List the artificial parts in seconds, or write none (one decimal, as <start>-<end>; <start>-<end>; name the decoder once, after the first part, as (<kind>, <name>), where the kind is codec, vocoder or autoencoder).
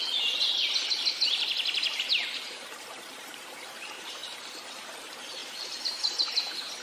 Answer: 1.9-4.2 (vocoder, BigVGAN v2); 5.0-6.8